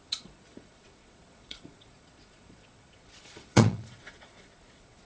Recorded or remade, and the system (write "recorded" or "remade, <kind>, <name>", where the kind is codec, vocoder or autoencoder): remade, vocoder, Vocos